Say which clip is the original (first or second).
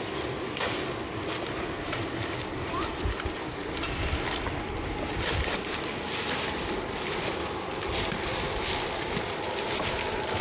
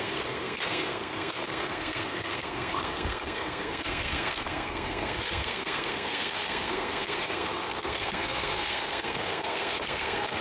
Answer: first